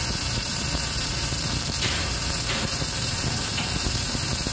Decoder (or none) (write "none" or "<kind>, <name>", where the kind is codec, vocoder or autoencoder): vocoder, BigVGAN v2